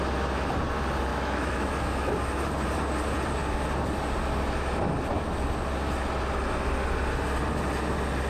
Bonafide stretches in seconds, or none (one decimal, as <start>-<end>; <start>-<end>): 0.0-1.1; 2.2-8.3